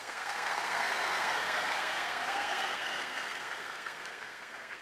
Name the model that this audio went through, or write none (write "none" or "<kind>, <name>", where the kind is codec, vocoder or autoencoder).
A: codec, SNAC